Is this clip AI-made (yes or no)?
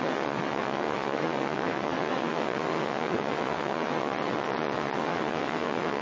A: yes